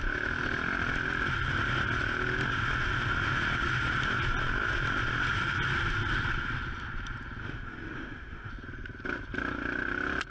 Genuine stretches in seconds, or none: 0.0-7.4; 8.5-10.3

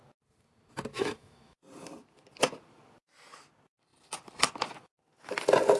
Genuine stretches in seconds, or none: 0.0-0.9; 1.6-5.8